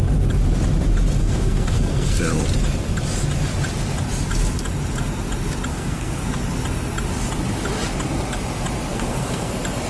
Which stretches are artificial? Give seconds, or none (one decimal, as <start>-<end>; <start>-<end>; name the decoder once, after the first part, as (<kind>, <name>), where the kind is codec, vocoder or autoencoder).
1.2-2.2 (codec, SNAC); 5.7-6.4; 8.9-9.5